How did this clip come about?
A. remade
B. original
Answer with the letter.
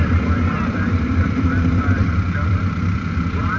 A